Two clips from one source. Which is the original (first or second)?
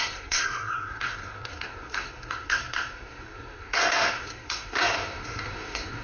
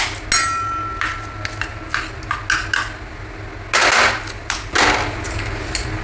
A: second